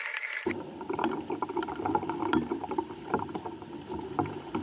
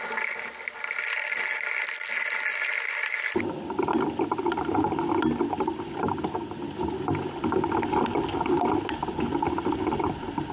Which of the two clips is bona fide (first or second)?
second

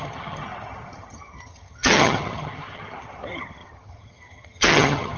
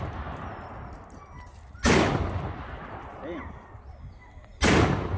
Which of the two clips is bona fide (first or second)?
second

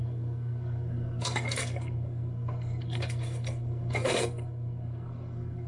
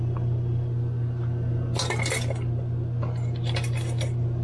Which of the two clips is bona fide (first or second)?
second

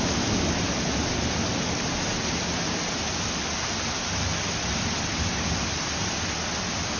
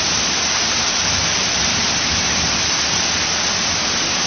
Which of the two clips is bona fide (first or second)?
first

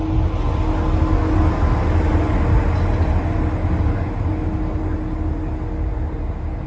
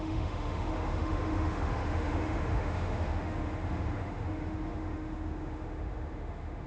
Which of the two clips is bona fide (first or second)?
first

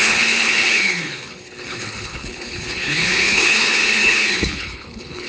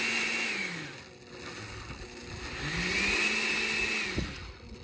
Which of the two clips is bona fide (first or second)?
second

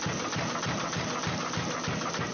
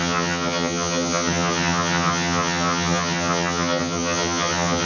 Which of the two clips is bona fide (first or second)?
first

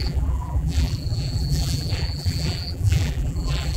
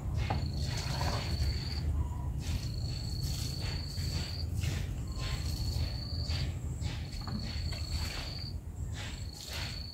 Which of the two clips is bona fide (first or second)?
second